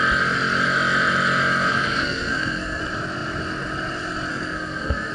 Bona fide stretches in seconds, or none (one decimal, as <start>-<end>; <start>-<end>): 0.0-1.7; 2.8-4.3